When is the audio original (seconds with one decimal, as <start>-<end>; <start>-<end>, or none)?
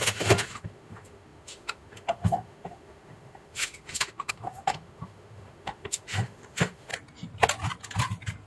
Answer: 6.9-8.5